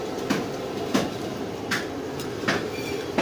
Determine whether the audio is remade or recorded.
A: recorded